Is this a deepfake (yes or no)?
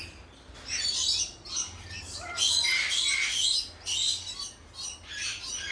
no